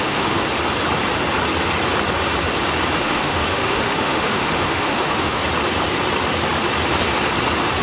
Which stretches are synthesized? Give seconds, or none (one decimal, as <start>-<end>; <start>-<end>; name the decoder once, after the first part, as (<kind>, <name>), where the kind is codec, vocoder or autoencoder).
0.0-0.4 (autoencoder, DAC-VAE); 3.0-5.4